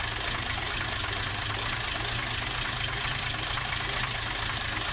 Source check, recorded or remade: recorded